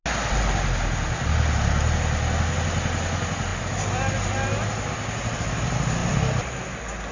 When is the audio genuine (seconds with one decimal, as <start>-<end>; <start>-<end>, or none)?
0.0-7.1